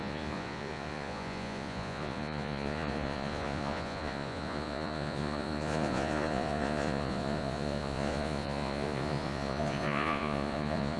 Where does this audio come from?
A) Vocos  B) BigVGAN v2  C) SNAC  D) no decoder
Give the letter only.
A